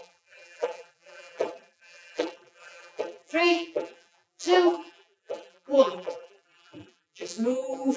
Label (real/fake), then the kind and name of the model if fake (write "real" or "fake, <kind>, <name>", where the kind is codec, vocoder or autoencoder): fake, vocoder, BigVGAN v2